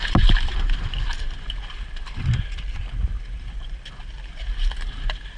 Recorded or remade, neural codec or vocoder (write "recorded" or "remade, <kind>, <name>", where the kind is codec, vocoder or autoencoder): recorded